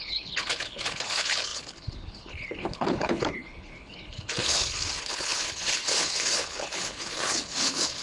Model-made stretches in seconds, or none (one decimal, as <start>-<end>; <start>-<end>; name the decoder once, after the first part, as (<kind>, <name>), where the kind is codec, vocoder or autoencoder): 0.0-8.0 (codec, HILCodec)